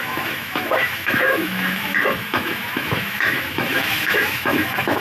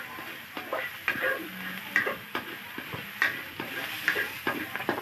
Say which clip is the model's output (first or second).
first